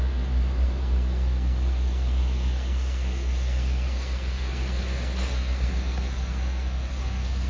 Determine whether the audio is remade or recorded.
remade